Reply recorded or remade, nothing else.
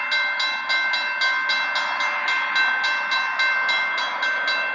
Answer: recorded